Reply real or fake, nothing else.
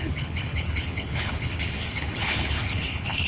fake